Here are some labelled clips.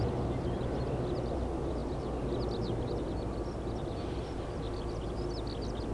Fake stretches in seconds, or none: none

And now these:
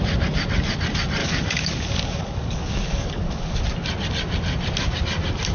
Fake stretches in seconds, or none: 1.2-3.6 (codec, DAC)

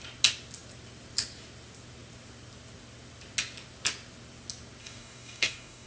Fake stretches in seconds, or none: 4.8-5.9 (codec, DAC)

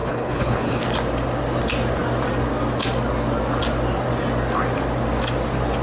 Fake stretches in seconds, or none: 0.0-0.8 (codec, HILCodec)

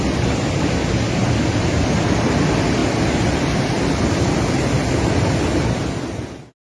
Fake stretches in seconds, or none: none

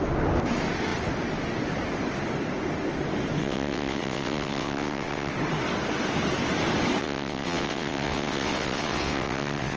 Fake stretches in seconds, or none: 3.4-5.3 (vocoder, WaveNeXt); 7.0-9.8

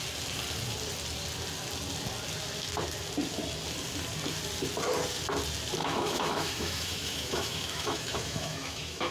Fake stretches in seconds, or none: 5.8-9.1 (autoencoder, DAC-VAE)